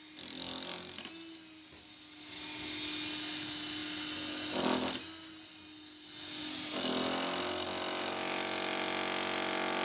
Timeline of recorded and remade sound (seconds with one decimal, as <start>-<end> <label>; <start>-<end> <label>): 0.0-9.8 recorded